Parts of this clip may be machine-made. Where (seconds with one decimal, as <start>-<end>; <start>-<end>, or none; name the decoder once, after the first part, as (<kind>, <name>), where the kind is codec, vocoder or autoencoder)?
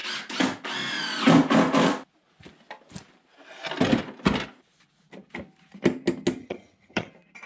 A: 6.4-7.1 (vocoder, HiFi-GAN)